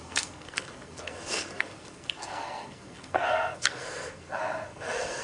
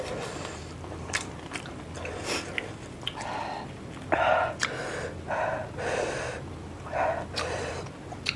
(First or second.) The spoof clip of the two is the first